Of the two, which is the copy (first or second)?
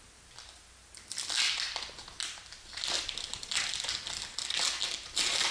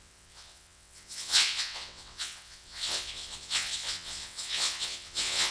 second